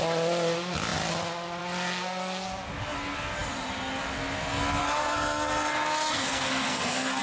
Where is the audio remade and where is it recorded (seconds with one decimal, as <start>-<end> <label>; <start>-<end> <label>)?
0.0-4.8 recorded; 4.8-7.2 remade